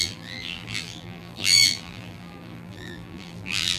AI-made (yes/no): yes